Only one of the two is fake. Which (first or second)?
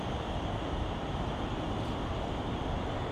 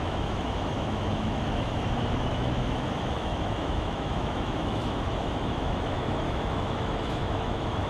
second